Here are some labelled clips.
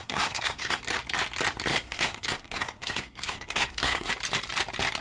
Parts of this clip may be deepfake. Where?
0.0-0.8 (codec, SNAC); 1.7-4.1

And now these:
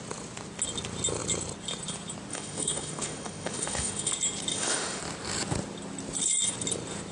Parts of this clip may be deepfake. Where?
2.3-4.1 (autoencoder, DAC-VAE); 4.5-5.0

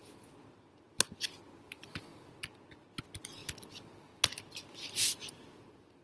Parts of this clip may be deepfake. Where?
1.0-2.1 (vocoder, BigVGAN v2); 3.0-3.4; 5.3-6.0

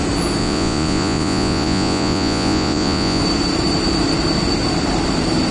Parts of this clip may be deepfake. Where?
0.4-3.2 (vocoder, Vocos)

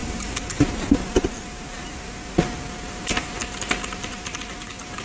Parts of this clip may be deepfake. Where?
none

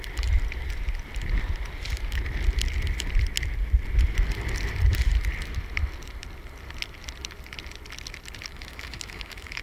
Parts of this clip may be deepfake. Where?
8.5-9.6 (autoencoder, DAC-VAE)

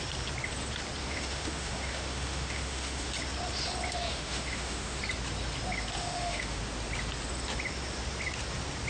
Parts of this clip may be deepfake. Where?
1.0-3.1 (autoencoder, DAC-VAE); 4.1-5.0; 6.0-6.6